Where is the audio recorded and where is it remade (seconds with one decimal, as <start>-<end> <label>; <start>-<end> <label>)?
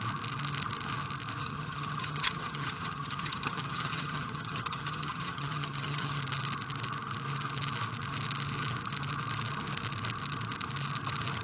0.0-1.4 recorded; 1.4-6.2 remade; 6.2-11.4 recorded